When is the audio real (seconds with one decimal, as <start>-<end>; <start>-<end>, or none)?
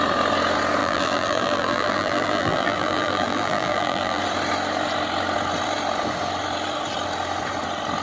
0.0-0.8; 4.2-8.0